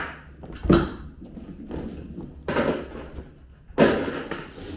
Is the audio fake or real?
real